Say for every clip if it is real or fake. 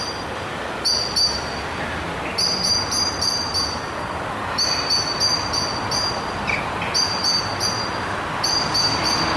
real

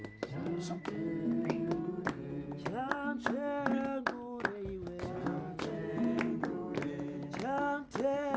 real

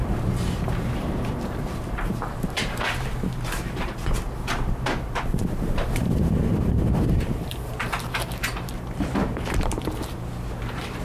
fake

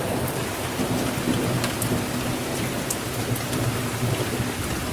real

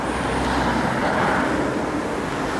real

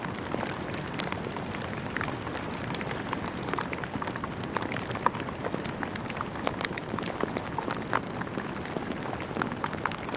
fake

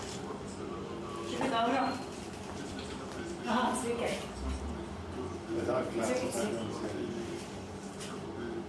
real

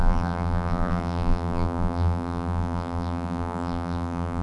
fake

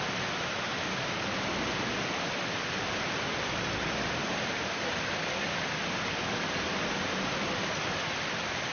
fake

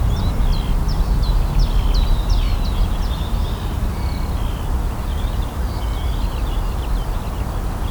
real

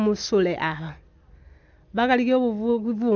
real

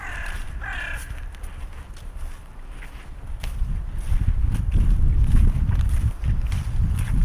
real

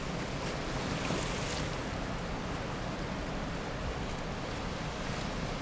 real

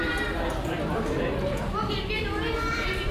real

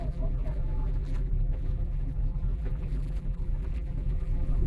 fake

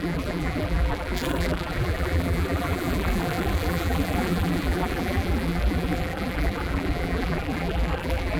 fake